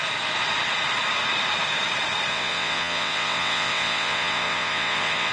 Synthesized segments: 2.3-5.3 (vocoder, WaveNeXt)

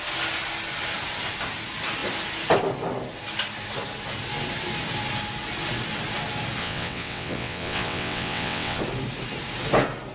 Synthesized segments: 6.6-8.8 (vocoder, WaveNeXt)

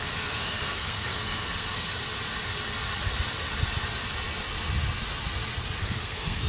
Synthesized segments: 0.0-1.9 (codec, SNAC); 5.8-6.5

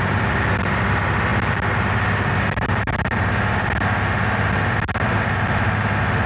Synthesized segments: none

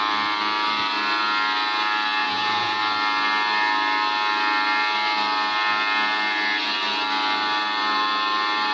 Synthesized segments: 2.2-2.8 (vocoder, Vocos)

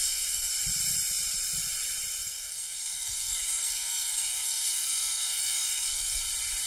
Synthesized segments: 0.0-0.5 (codec, SNAC); 2.2-6.2

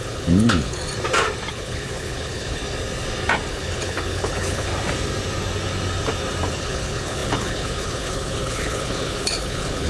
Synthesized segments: 0.0-0.8 (codec, HILCodec); 1.5-2.6; 3.5-4.7; 6.5-9.9